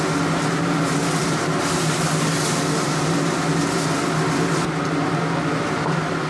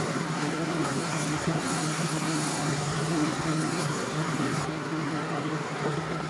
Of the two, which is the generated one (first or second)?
second